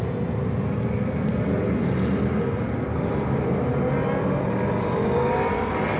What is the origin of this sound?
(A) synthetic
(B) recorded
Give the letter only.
B